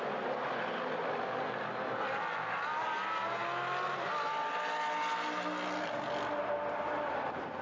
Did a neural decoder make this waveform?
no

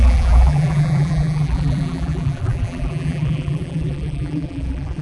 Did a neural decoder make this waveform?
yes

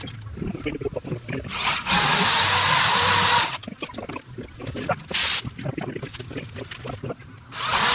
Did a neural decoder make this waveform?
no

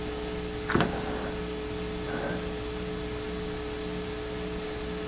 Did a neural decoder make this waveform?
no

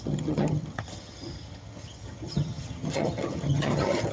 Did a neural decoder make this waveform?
yes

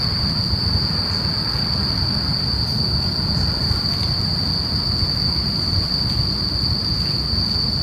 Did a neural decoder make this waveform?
no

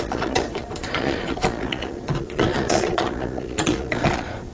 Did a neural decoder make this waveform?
yes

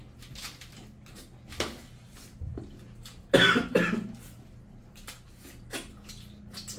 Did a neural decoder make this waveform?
no